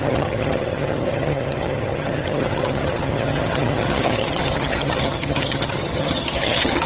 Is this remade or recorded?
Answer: remade